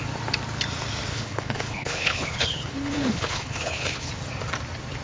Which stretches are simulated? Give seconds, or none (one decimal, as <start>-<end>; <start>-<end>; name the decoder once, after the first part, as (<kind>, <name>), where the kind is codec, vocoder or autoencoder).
1.1-4.1 (codec, HILCodec)